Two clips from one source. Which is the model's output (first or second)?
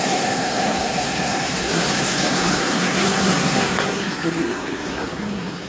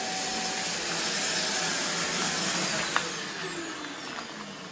first